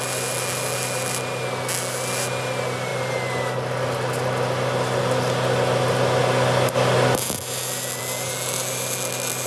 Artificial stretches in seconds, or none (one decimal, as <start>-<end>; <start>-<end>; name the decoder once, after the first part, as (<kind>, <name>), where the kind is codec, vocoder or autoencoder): none